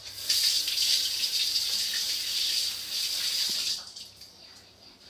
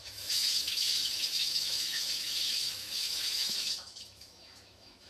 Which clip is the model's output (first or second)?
second